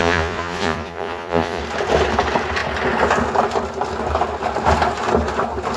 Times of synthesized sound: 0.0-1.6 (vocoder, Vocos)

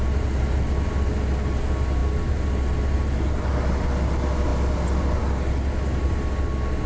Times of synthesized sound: none

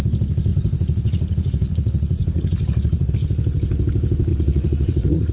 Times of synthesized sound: 0.5-3.1 (vocoder, Vocos); 4.3-5.3

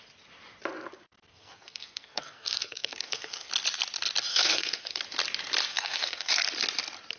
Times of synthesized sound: 1.3-3.5 (codec, SNAC); 4.3-5.0; 5.7-6.3

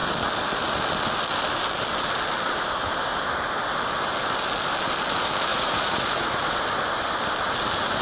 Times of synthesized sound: 5.5-6.6 (vocoder, Vocos)